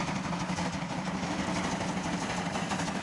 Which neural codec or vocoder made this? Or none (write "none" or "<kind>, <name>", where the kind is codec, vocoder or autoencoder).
none